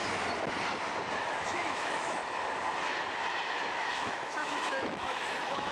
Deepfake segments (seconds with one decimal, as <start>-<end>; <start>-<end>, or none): 1.2-2.2; 3.9-5.7